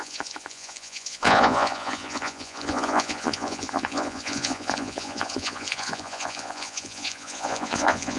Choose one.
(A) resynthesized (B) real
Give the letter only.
A